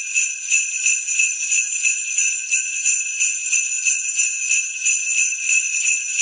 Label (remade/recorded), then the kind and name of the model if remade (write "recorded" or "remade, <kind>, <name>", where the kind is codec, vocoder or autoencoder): recorded